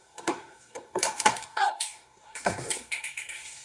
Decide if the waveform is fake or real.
fake